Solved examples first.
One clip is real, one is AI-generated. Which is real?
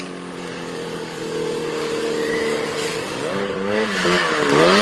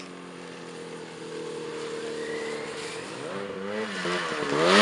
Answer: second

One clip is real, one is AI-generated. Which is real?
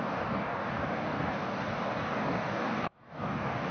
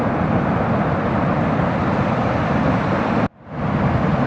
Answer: second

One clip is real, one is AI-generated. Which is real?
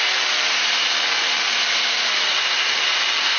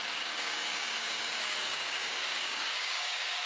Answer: first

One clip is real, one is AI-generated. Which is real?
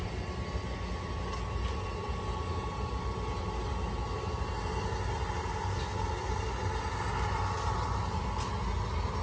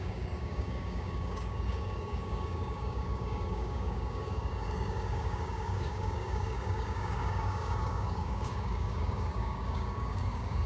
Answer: first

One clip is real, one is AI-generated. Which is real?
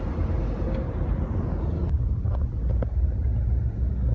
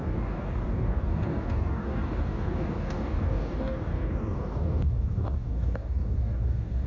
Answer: first